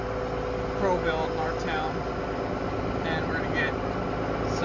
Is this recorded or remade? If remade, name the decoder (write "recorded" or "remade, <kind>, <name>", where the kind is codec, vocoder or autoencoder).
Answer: recorded